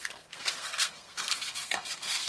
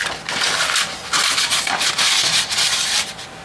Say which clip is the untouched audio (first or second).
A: second